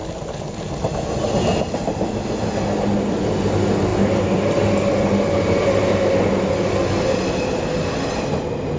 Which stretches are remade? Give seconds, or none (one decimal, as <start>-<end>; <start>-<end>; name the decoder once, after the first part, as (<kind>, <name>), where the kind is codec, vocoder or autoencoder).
none